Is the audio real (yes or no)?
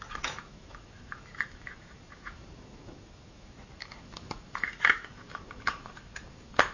no